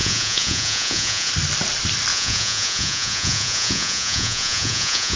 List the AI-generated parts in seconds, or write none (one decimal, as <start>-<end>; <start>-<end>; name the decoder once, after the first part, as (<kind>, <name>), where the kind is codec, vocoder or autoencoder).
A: 0.0-1.3 (vocoder, Vocos); 2.1-5.2